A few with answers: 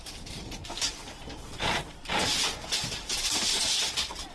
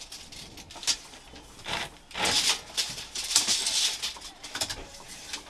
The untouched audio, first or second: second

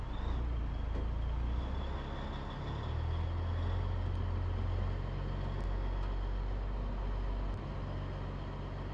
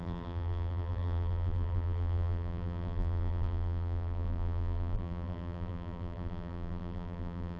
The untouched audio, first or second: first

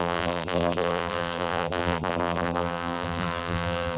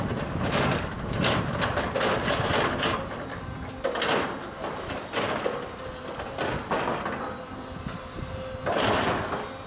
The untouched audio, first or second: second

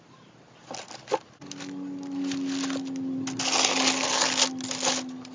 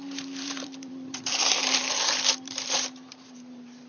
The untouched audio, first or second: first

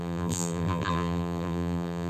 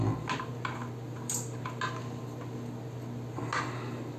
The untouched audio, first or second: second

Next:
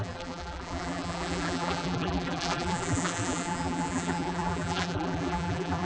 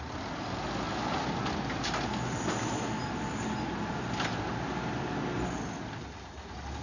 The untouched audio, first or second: second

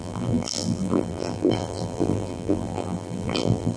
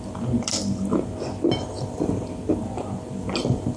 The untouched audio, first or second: second